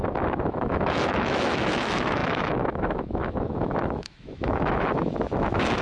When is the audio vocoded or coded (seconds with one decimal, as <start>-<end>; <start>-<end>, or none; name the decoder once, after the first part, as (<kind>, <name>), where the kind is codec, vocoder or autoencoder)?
0.0-5.8 (autoencoder, DAC-VAE)